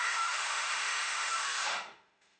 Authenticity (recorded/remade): remade